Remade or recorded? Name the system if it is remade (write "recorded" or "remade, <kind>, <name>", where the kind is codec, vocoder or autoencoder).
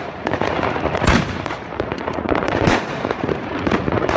remade, vocoder, Vocos